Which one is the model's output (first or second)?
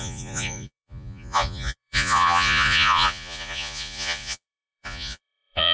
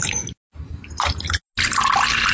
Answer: first